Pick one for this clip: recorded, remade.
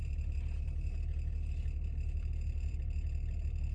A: remade